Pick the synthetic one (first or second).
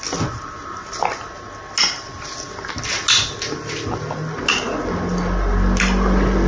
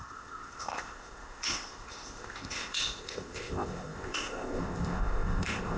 second